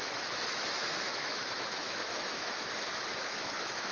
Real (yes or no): no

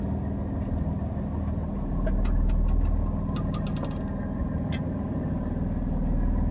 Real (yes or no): yes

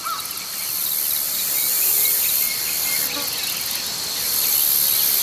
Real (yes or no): yes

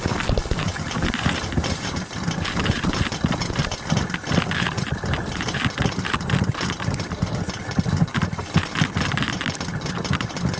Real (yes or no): yes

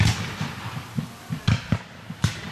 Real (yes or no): yes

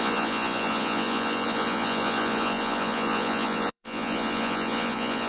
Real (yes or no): no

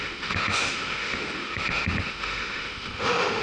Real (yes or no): no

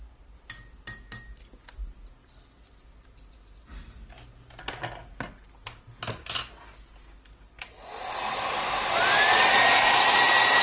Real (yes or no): yes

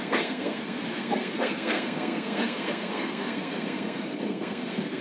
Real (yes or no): no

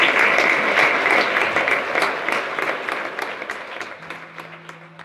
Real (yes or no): yes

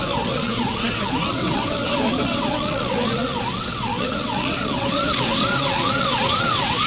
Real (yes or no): no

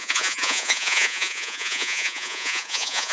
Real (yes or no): no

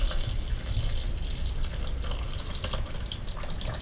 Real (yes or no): yes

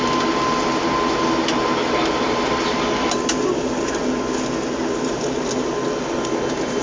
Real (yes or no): yes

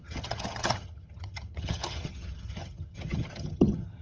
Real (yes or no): no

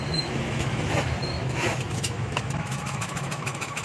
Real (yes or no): no